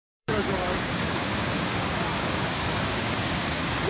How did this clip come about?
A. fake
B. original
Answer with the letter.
A